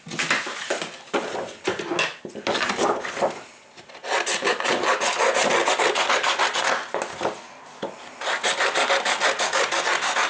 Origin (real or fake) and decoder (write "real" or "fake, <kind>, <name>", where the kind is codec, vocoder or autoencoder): real